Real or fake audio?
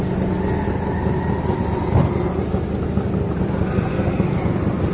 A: real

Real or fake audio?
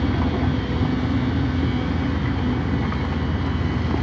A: real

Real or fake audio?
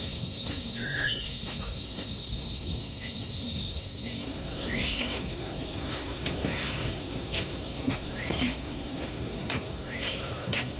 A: fake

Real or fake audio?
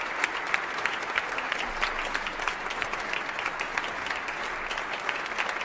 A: real